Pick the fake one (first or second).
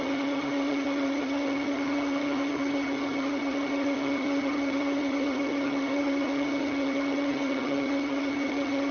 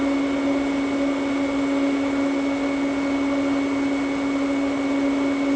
first